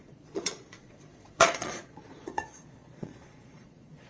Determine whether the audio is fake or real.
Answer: fake